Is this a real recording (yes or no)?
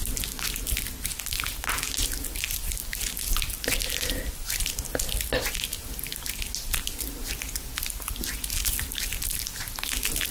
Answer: yes